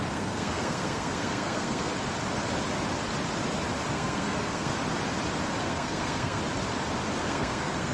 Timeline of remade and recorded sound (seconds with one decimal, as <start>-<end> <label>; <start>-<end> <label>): 0.0-1.9 remade; 1.9-3.9 recorded; 3.9-4.8 remade; 4.8-5.6 recorded; 5.6-6.4 remade; 6.4-7.2 recorded; 7.2-7.9 remade